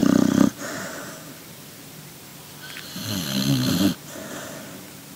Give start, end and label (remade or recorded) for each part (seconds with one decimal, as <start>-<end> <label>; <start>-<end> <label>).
0.0-1.9 remade; 1.9-2.3 recorded; 2.3-2.8 remade; 2.8-5.2 recorded